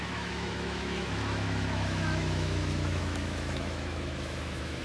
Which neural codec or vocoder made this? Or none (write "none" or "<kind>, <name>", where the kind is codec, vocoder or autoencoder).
autoencoder, DAC-VAE